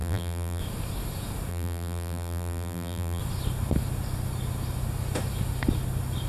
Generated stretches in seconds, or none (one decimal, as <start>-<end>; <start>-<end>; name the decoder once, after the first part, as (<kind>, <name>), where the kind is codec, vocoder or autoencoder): 0.0-0.6 (vocoder, BigVGAN v2); 1.5-3.2